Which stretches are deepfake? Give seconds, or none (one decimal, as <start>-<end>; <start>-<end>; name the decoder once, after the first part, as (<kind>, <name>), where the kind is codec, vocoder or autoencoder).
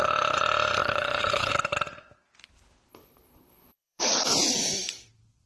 0.8-1.5 (codec, HILCodec); 2.9-4.1